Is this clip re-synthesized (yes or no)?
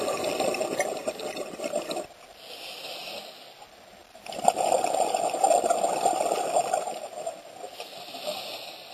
no